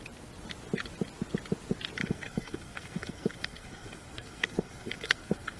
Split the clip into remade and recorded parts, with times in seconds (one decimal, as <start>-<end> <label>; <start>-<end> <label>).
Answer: 0.0-2.0 recorded; 2.0-5.6 remade